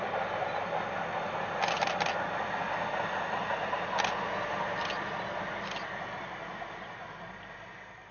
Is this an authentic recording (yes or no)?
yes